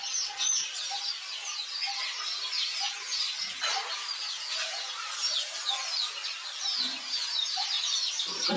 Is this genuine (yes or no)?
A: yes